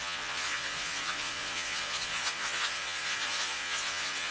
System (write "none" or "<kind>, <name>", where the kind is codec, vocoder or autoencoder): vocoder, Vocos